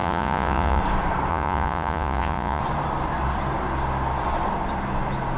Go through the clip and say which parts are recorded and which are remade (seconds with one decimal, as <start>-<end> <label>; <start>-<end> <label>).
0.0-0.8 remade; 0.8-1.3 recorded; 1.3-2.6 remade; 2.6-5.4 recorded